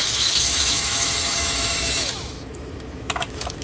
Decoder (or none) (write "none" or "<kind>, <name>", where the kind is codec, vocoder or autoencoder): autoencoder, DAC-VAE